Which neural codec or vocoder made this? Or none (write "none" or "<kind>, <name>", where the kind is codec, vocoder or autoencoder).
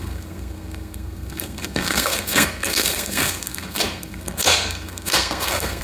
codec, SNAC